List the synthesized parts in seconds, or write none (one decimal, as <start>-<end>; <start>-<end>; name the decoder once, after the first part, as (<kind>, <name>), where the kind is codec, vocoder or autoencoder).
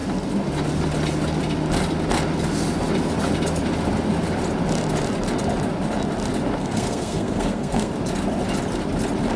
6.6-7.9 (codec, SNAC)